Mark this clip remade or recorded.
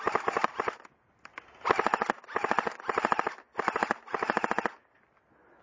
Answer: recorded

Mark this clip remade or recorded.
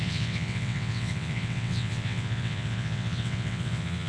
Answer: remade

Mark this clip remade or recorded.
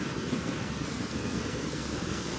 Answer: remade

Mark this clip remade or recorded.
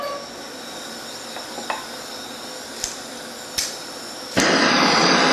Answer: remade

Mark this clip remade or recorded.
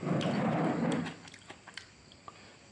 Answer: recorded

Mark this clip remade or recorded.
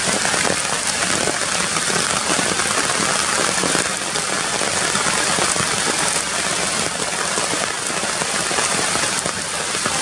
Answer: recorded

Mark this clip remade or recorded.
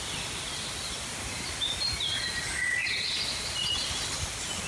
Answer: recorded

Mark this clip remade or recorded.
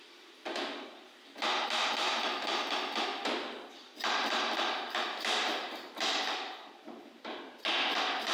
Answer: recorded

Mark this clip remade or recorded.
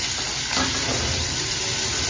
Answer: remade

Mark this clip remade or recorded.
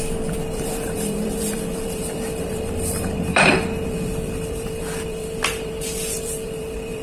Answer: remade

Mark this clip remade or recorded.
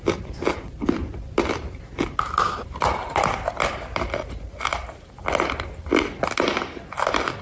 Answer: recorded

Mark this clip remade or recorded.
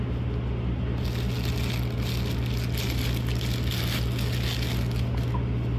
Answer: recorded